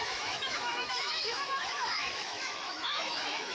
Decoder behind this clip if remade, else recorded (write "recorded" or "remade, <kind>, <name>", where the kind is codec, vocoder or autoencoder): remade, autoencoder, DAC-VAE